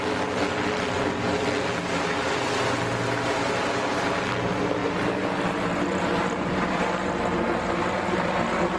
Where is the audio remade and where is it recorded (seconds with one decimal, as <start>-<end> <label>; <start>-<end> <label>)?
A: 0.0-8.8 recorded